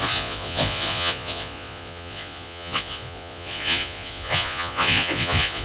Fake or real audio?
fake